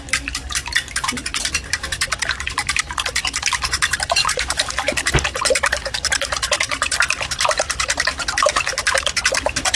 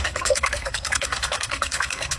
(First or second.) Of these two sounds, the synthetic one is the second